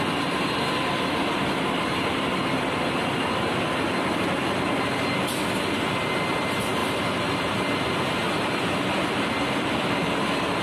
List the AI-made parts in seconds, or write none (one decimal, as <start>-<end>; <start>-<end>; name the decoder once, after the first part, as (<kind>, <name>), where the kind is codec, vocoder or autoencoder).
none